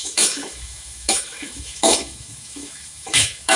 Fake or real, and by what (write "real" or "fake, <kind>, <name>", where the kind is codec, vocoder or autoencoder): fake, autoencoder, DAC-VAE